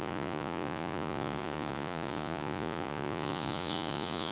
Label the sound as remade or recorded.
remade